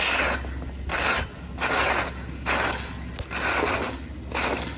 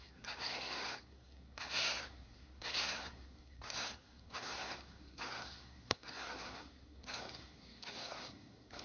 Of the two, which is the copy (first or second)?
second